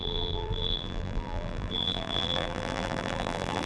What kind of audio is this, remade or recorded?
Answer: remade